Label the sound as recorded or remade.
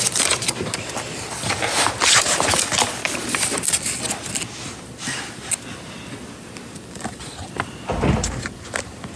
recorded